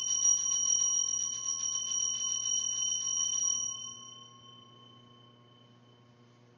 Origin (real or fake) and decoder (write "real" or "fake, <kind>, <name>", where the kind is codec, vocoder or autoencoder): real